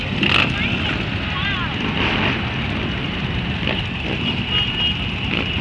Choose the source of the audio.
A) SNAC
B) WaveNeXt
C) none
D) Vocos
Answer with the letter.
C